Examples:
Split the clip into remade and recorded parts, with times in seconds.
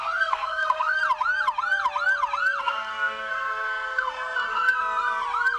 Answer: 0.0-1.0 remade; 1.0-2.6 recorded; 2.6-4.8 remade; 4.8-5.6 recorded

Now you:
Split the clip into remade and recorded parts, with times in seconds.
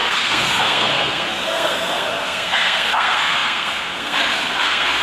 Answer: 0.0-5.0 remade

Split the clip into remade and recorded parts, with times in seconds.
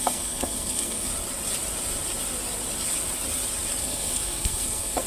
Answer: 0.0-1.1 remade; 1.1-3.8 recorded; 3.8-5.1 remade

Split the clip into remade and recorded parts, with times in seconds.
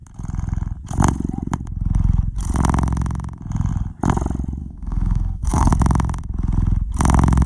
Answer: 0.0-4.6 recorded; 4.6-5.7 remade; 5.7-7.5 recorded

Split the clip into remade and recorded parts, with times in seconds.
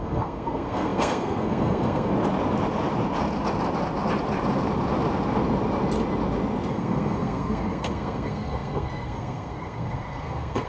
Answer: 0.0-2.1 remade; 2.1-6.7 recorded; 6.7-10.7 remade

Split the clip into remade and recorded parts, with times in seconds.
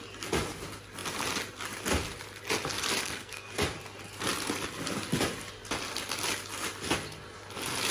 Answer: 0.0-3.0 recorded; 3.0-3.5 remade; 3.5-7.9 recorded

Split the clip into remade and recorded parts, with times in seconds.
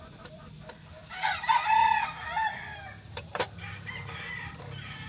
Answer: 0.0-5.1 recorded